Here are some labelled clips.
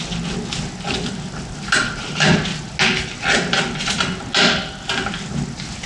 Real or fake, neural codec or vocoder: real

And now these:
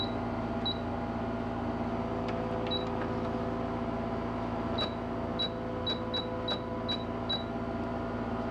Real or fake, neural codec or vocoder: real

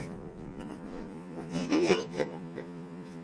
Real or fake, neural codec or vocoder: fake, vocoder, Vocos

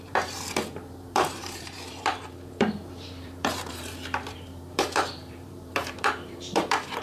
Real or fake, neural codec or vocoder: fake, vocoder, BigVGAN v2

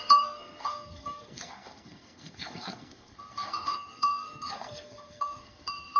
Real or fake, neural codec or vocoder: fake, codec, SNAC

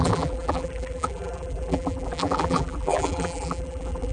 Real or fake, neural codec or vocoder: fake, vocoder, BigVGAN v2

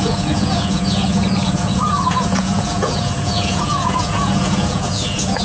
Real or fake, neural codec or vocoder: fake, vocoder, Vocos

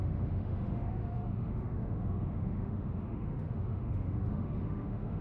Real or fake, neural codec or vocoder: fake, autoencoder, DAC-VAE